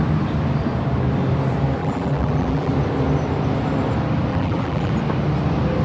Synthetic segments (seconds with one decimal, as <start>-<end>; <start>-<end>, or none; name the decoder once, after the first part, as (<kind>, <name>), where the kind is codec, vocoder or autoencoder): 1.8-2.7 (vocoder, BigVGAN v2); 4.3-4.9